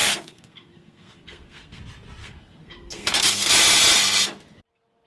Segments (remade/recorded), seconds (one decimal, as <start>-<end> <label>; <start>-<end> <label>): 0.0-1.8 remade; 1.8-2.2 recorded; 2.2-3.5 remade; 3.5-5.1 recorded